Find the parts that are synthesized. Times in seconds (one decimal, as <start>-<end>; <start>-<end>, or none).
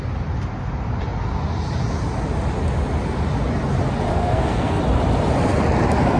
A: 4.1-4.8